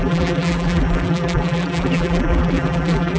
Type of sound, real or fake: fake